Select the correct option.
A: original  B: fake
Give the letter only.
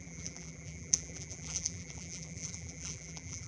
B